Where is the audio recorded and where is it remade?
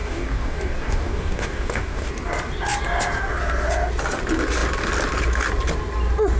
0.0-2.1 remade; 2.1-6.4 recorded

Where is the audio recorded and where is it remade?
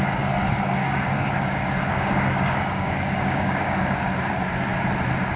0.0-0.8 recorded; 0.8-4.0 remade; 4.0-5.4 recorded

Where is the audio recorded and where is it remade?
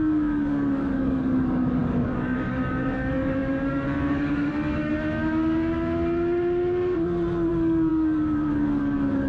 0.0-4.9 remade; 4.9-7.5 recorded; 7.5-9.3 remade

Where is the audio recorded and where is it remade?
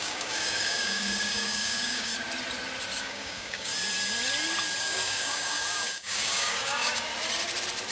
0.0-2.1 remade; 2.1-3.0 recorded; 3.0-3.7 remade; 3.7-4.8 recorded; 4.8-7.1 remade; 7.1-7.9 recorded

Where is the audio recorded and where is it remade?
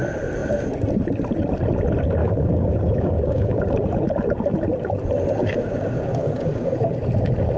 0.0-2.2 recorded; 2.2-3.6 remade; 3.6-5.4 recorded; 5.4-6.7 remade; 6.7-7.6 recorded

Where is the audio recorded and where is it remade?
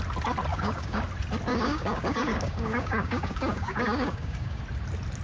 0.0-0.5 recorded; 0.5-1.0 remade; 1.0-1.5 recorded; 1.5-4.6 remade; 4.6-5.2 recorded